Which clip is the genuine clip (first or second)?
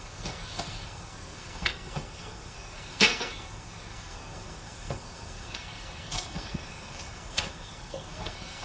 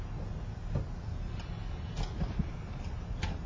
second